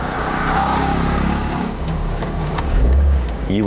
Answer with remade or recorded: remade